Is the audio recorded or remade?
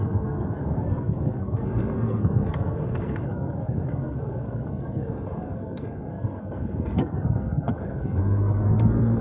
remade